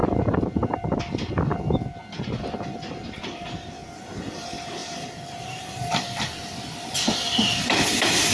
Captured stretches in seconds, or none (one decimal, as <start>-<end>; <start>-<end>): 1.0-4.8; 6.0-8.3